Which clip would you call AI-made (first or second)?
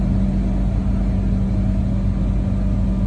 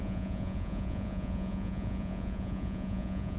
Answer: second